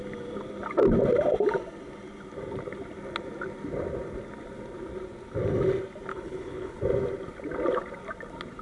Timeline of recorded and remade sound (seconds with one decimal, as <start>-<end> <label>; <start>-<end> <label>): 0.0-6.1 recorded; 6.1-6.8 remade; 6.8-8.6 recorded